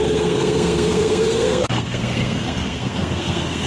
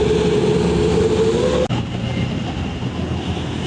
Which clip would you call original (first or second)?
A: second